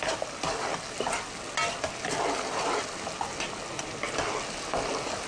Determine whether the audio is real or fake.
real